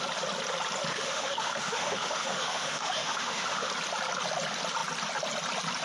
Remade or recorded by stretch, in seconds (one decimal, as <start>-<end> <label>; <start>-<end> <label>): 0.0-0.9 recorded; 0.9-3.7 remade; 3.7-5.8 recorded